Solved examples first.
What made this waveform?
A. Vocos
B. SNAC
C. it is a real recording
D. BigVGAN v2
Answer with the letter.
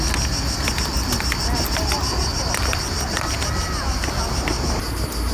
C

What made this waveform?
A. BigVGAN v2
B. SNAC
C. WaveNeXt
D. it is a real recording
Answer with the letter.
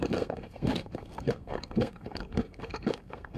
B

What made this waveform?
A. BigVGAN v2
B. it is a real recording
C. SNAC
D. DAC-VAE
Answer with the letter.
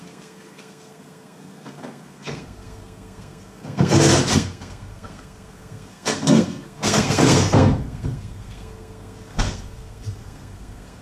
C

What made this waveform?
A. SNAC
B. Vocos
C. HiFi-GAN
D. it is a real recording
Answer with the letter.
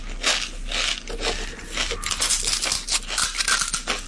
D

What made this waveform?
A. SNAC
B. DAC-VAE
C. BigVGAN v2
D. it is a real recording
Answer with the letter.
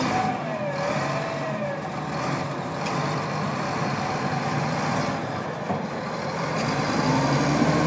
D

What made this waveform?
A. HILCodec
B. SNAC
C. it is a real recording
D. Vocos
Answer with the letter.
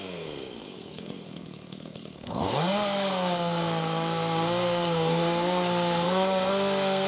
B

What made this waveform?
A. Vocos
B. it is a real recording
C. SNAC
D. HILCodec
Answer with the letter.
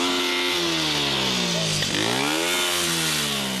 B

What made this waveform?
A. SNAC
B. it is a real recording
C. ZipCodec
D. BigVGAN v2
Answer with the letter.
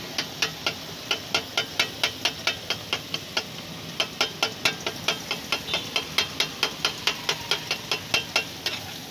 B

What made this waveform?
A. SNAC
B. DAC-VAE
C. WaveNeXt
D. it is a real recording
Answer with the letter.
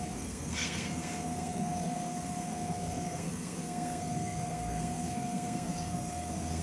A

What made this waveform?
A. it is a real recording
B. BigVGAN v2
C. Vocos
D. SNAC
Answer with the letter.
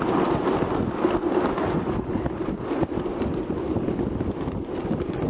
A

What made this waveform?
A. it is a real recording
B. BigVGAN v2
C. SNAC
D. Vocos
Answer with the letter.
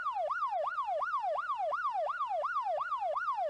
A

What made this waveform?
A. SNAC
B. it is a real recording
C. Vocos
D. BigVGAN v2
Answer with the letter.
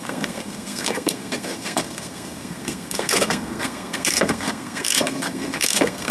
A